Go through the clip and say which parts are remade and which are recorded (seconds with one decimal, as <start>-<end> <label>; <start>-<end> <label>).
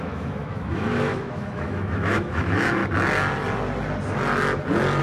0.0-2.8 remade; 2.8-5.0 recorded